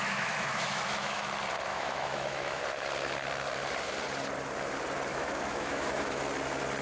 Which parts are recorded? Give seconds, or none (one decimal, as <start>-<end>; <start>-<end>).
1.2-1.7; 2.6-5.1; 6.2-6.8